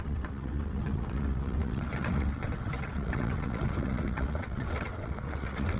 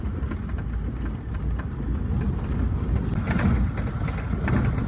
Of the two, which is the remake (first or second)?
first